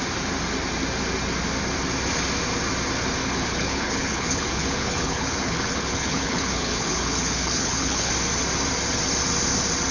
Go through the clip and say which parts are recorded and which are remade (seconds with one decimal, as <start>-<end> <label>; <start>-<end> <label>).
0.0-3.2 recorded; 3.2-8.1 remade; 8.1-9.9 recorded